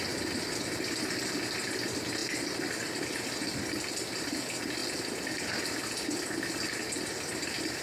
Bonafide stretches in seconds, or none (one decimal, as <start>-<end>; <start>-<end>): 0.0-7.8